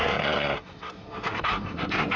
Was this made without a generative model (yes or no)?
no